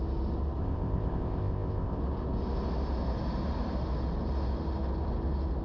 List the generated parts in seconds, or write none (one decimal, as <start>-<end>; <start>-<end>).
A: 0.6-2.0